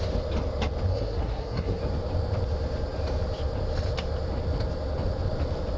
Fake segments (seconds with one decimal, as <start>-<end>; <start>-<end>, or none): 0.9-1.8